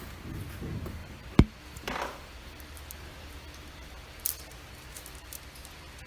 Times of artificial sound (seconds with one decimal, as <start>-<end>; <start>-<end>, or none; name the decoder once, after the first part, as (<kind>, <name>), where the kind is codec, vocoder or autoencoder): none